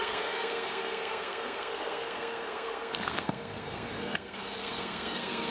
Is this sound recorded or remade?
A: remade